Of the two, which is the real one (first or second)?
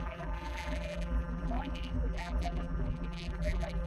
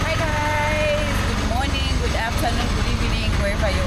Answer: second